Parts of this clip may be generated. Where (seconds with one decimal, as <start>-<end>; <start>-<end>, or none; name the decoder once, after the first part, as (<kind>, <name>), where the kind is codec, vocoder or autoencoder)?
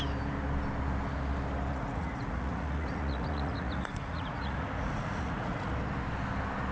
1.7-5.7 (vocoder, Vocos)